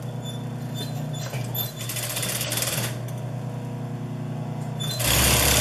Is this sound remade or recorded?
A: recorded